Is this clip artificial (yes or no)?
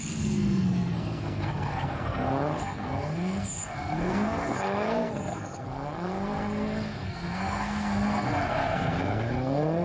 yes